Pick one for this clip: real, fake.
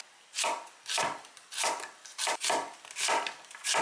real